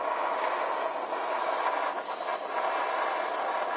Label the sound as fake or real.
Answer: real